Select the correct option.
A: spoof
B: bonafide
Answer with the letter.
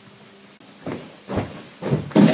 B